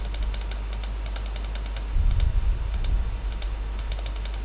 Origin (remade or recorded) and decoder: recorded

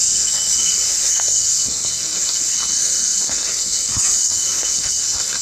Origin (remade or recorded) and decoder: remade, codec, SNAC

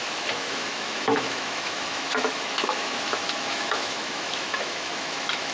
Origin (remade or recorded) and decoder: remade, autoencoder, DAC-VAE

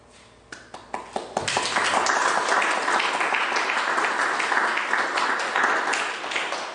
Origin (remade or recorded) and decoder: recorded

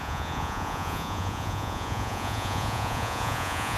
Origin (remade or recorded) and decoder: remade, vocoder, Vocos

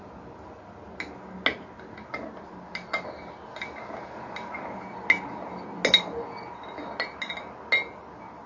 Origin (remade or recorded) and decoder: recorded